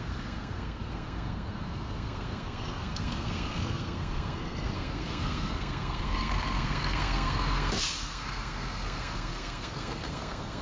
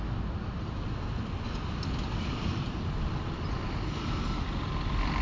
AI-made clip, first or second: first